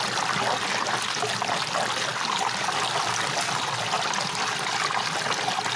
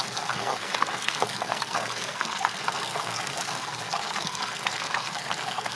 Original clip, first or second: first